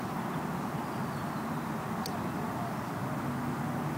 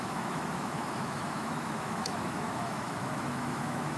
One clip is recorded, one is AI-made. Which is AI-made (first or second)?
second